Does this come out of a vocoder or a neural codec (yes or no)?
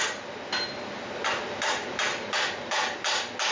no